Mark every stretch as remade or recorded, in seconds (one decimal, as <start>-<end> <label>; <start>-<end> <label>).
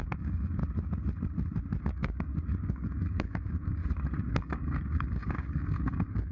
0.0-0.6 remade; 0.6-1.8 recorded; 1.8-3.8 remade; 3.8-4.3 recorded; 4.3-6.3 remade